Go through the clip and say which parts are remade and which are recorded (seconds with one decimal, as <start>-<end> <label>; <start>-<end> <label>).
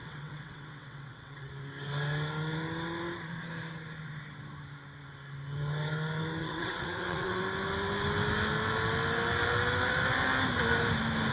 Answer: 0.0-1.5 remade; 1.5-6.4 recorded; 6.4-7.4 remade; 7.4-11.3 recorded